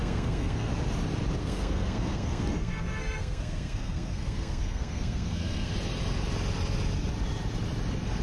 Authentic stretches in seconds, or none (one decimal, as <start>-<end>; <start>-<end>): 0.7-1.4; 5.7-8.2